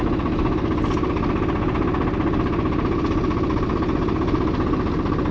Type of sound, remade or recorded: recorded